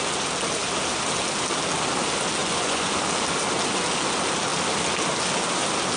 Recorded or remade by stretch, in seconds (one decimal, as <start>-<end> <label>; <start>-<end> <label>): 0.0-2.4 recorded; 2.4-2.9 remade; 2.9-6.0 recorded